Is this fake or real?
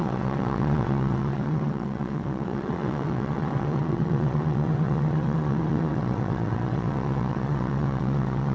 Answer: fake